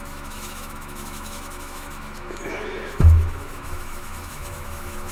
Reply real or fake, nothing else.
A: fake